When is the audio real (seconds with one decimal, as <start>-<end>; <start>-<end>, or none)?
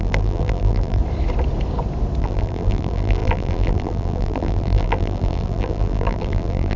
1.0-2.2